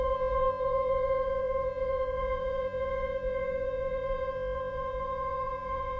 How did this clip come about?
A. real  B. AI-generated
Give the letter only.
B